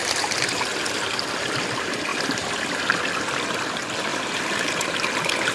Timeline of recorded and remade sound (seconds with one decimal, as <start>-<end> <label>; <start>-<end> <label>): 0.0-0.7 remade; 0.7-2.1 recorded; 2.1-2.8 remade; 2.8-4.1 recorded; 4.1-5.1 remade; 5.1-5.5 recorded

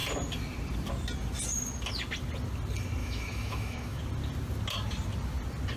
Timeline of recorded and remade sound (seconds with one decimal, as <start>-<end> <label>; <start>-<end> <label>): 0.0-3.0 recorded; 3.0-4.0 remade; 4.0-5.8 recorded